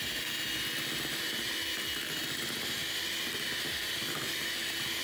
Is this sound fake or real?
real